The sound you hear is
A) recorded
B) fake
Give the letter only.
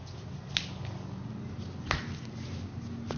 A